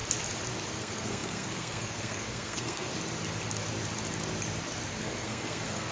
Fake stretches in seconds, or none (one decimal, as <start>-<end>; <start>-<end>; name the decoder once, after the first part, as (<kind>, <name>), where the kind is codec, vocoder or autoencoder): 0.7-2.9 (codec, SNAC); 5.0-5.9